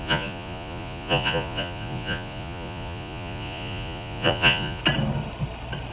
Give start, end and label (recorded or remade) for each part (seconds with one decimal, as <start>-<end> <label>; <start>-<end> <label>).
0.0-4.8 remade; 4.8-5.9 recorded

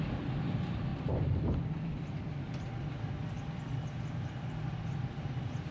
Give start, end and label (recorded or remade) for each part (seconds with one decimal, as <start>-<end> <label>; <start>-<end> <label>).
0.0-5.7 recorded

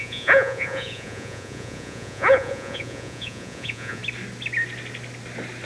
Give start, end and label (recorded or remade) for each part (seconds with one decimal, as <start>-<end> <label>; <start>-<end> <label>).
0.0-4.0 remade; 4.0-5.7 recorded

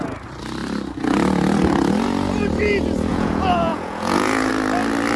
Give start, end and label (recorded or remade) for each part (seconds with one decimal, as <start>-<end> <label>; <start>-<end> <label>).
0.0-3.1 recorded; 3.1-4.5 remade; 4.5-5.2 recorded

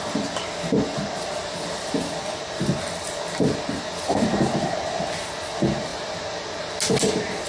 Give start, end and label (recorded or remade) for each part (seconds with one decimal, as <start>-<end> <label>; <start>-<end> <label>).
0.0-7.5 recorded

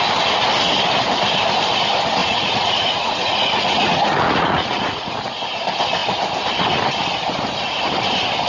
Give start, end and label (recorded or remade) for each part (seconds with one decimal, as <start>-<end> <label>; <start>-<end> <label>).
0.0-2.2 recorded; 2.2-5.1 remade; 5.1-8.5 recorded

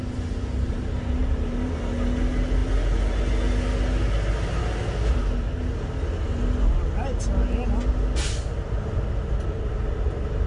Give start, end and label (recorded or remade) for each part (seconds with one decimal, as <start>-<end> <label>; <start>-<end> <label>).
0.0-10.5 recorded